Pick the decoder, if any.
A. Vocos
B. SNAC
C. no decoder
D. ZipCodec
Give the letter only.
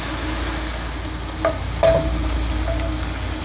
C